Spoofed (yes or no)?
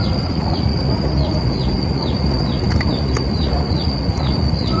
yes